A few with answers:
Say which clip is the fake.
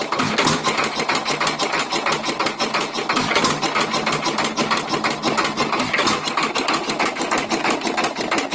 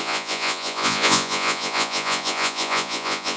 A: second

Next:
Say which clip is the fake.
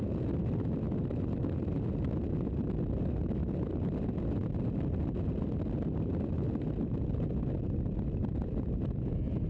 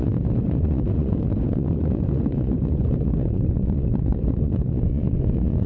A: second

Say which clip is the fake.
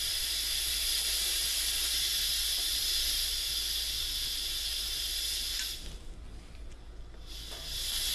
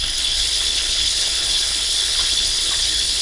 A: second